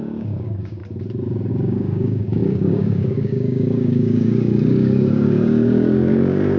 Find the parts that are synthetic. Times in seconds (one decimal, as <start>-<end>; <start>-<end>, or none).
0.0-0.8; 1.5-6.6